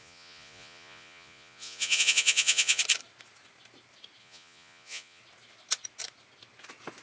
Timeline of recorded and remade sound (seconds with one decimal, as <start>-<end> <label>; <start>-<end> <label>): 0.0-2.8 remade; 2.8-4.2 recorded; 4.2-5.2 remade; 5.2-7.0 recorded